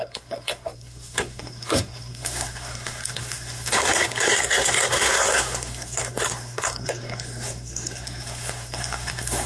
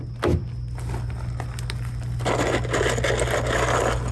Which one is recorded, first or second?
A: second